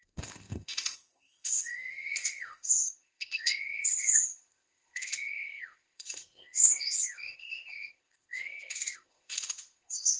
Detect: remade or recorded remade